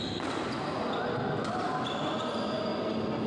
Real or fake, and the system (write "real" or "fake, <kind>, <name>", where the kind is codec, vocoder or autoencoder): real